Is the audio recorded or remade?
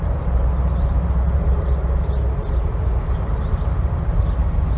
recorded